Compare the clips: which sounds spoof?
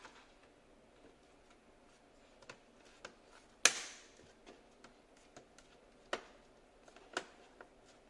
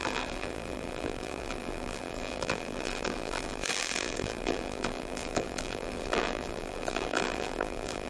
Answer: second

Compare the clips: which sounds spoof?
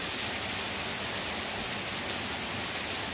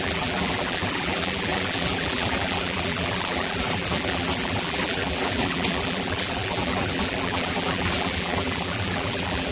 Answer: second